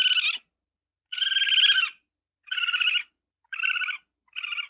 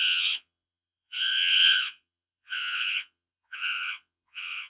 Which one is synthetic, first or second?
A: second